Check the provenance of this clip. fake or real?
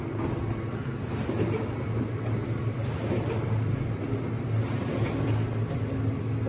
real